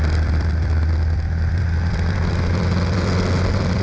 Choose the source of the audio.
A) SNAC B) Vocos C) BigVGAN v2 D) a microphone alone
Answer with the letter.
C